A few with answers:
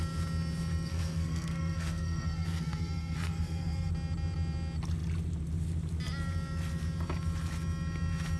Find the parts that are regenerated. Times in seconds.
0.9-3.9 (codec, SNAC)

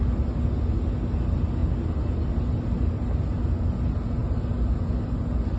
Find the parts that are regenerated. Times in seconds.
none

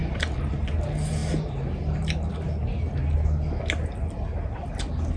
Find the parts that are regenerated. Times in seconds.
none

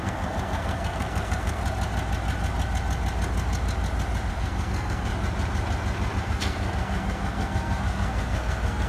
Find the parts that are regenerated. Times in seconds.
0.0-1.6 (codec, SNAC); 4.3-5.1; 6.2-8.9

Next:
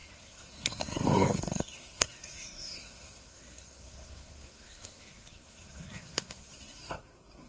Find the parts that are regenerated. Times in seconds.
0.0-7.5 (codec, SNAC)

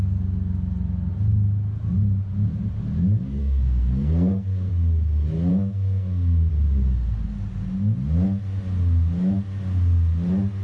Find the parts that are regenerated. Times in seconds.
3.4-4.7 (codec, SNAC); 5.5-6.5

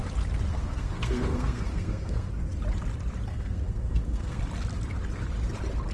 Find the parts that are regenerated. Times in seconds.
0.5-2.3 (codec, SNAC); 3.3-4.4

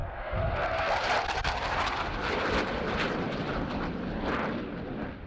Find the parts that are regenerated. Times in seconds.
0.0-0.9 (codec, SNAC)